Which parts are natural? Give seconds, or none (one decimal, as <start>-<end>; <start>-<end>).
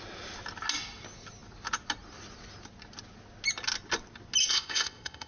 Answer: 0.0-4.4